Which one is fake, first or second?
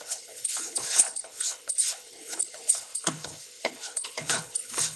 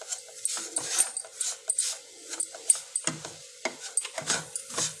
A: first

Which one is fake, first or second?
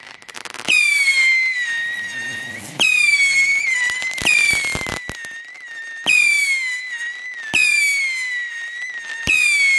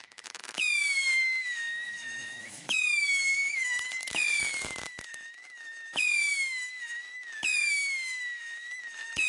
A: second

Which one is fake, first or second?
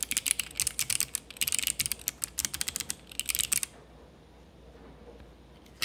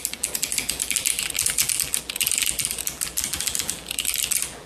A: second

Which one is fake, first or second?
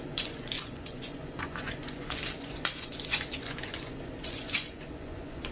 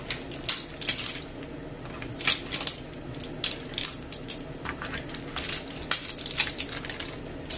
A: first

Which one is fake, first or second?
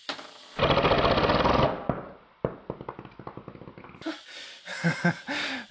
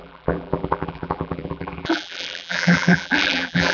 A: second